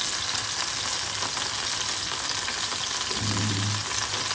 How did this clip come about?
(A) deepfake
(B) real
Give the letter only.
B